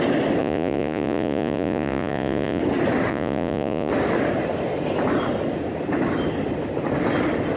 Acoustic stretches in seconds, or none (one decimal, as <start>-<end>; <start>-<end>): 0.0-0.4; 2.6-3.1; 3.9-7.6